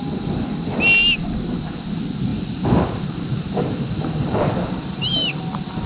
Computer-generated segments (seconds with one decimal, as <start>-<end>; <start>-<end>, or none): 2.3-5.4